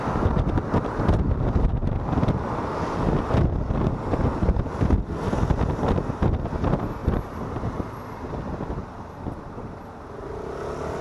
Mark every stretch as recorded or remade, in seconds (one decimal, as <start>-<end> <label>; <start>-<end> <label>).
0.0-7.0 recorded; 7.0-7.6 remade; 7.6-8.8 recorded; 8.8-9.8 remade; 9.8-11.0 recorded